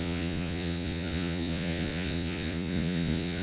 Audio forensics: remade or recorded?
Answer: remade